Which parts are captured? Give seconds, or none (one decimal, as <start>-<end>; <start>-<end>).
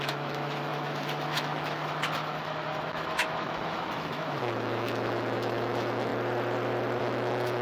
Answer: 6.1-7.0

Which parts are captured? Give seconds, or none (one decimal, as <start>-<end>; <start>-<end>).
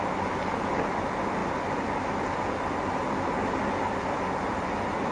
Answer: 0.0-5.1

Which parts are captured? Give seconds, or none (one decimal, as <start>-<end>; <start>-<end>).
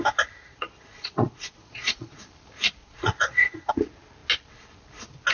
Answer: 0.0-0.4; 2.2-2.8; 3.7-5.3